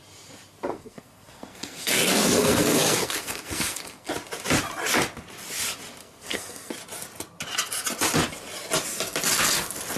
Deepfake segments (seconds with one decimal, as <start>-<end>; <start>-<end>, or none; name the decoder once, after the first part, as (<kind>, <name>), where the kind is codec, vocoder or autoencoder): 0.7-4.1 (codec, SNAC); 6.0-6.7